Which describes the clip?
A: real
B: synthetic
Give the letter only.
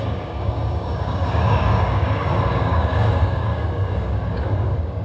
B